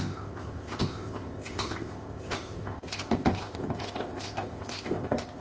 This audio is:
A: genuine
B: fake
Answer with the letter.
B